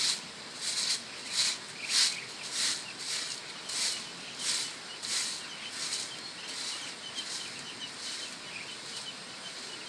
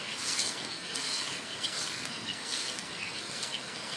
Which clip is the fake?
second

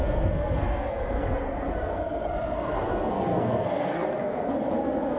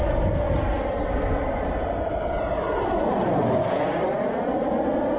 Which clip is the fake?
first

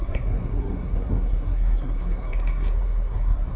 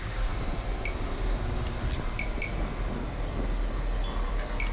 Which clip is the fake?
first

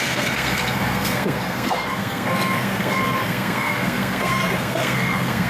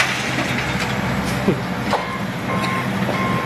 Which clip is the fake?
first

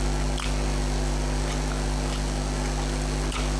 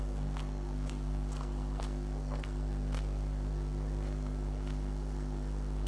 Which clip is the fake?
second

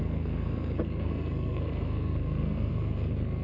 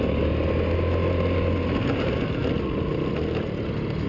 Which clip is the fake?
first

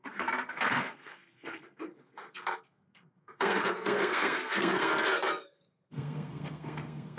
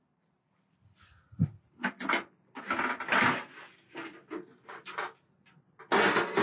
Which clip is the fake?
first